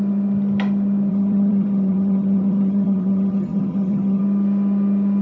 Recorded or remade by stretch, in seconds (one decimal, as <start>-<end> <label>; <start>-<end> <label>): 0.0-1.1 recorded; 1.1-4.2 remade; 4.2-5.2 recorded